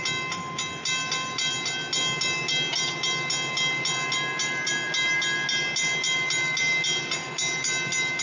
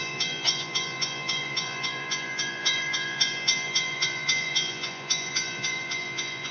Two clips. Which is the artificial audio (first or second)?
second